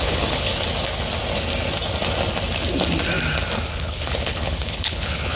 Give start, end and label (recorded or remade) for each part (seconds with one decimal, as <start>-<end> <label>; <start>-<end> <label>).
0.0-0.5 remade; 0.5-3.7 recorded; 3.7-5.4 remade